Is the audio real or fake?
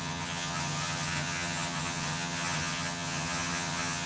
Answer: fake